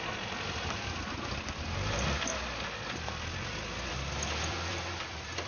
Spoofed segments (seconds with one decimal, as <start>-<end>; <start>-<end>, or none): 0.0-2.3; 2.9-5.5